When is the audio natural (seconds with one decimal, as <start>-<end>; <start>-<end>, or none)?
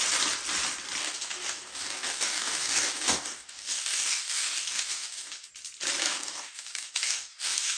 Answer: 0.0-1.0; 5.5-6.0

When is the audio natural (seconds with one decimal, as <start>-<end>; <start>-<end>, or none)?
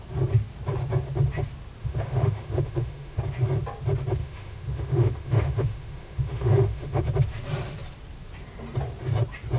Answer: 0.0-1.8; 3.2-4.2; 7.0-9.6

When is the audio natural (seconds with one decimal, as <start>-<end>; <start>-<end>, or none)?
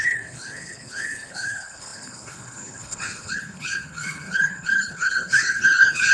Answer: none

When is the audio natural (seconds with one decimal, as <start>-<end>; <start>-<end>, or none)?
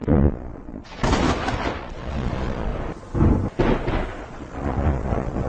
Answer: 1.0-1.8; 2.7-4.2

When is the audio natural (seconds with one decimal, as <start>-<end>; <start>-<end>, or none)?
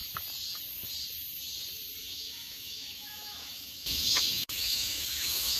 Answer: 0.0-2.0